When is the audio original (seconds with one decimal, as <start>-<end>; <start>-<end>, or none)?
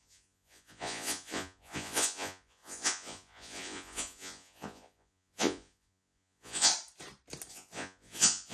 6.7-7.5